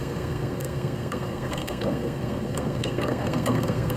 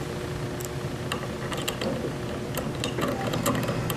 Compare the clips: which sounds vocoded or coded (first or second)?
first